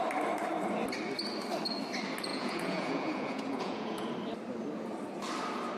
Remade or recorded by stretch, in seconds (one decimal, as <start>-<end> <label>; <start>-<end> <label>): 0.0-2.3 recorded; 2.3-4.1 remade; 4.1-5.8 recorded